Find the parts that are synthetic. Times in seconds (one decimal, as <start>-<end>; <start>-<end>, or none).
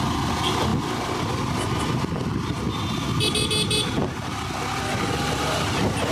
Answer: none